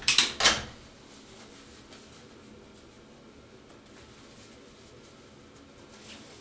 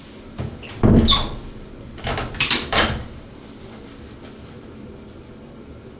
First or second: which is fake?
second